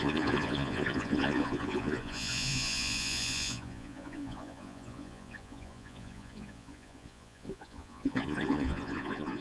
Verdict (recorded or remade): remade